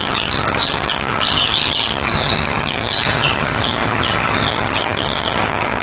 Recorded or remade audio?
remade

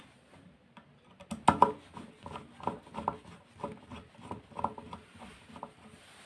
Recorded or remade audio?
recorded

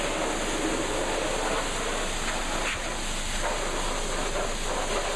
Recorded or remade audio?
recorded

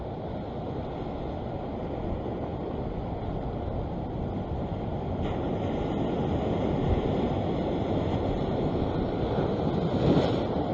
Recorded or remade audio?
recorded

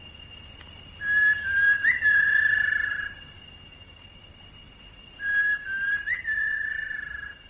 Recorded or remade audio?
recorded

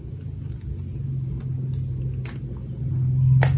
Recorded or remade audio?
recorded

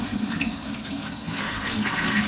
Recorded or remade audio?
remade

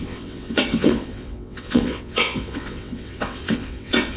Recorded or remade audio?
remade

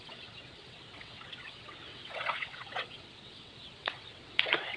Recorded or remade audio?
remade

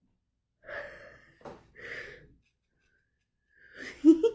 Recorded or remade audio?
recorded